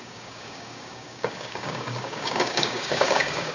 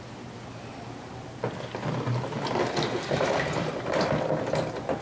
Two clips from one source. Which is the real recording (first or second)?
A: second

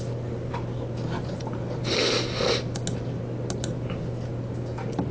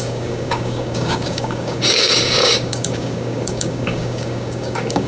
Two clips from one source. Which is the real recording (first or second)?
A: first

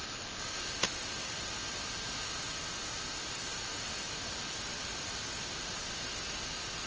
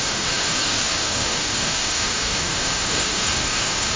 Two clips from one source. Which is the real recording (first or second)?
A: first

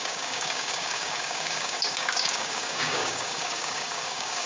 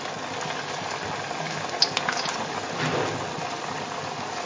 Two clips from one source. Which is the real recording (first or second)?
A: second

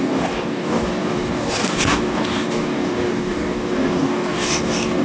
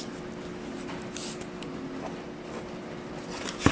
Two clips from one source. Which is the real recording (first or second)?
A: second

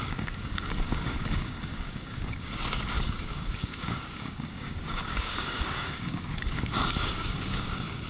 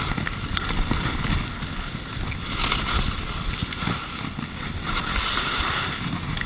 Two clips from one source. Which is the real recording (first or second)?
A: second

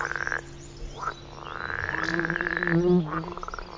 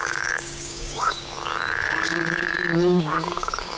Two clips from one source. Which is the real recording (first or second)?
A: first